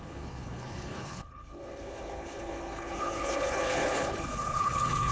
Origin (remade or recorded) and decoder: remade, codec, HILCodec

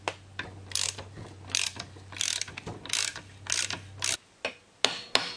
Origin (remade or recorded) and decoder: recorded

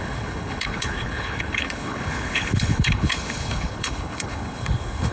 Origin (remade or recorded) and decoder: remade, codec, HILCodec